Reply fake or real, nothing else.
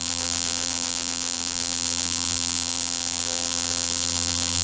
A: fake